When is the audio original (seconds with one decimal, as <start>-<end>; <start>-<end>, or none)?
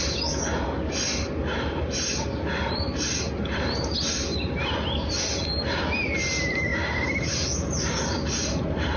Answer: 0.0-1.5; 3.8-6.7; 8.0-9.0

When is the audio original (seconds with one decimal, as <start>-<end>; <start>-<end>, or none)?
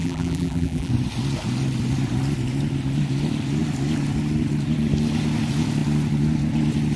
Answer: 0.9-7.0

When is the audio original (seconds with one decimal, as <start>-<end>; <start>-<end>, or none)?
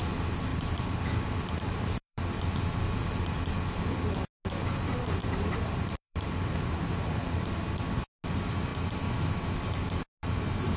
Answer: 0.0-0.5; 2.2-5.2; 7.6-10.8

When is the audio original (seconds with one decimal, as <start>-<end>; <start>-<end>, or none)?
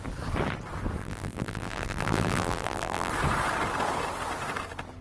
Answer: 0.0-1.0; 3.1-5.0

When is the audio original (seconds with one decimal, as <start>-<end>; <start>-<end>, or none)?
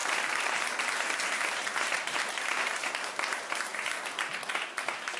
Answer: 0.9-1.7; 2.9-5.2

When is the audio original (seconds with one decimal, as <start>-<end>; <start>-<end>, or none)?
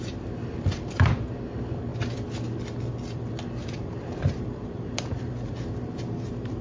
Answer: 1.9-3.8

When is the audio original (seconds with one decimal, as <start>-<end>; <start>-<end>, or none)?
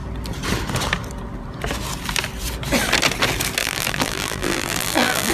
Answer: 0.0-3.6